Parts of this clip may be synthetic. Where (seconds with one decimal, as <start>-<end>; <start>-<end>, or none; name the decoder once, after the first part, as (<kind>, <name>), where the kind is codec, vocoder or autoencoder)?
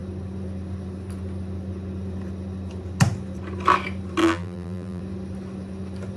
4.2-5.0 (vocoder, BigVGAN v2)